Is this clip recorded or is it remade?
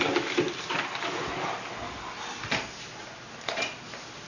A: recorded